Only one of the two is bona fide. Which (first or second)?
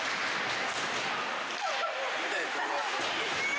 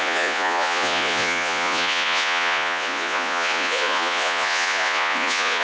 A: first